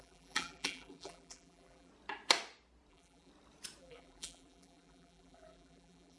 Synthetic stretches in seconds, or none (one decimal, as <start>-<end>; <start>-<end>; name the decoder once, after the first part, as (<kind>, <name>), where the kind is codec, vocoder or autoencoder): 0.0-1.9 (vocoder, BigVGAN v2); 2.9-3.3; 3.8-6.2